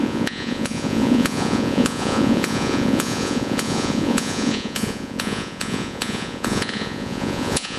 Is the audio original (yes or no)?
no